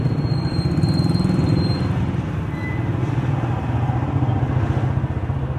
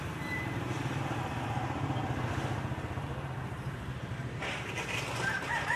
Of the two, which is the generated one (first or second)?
second